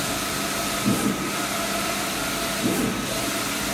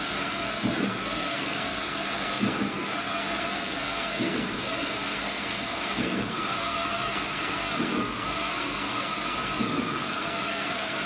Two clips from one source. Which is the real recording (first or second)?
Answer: first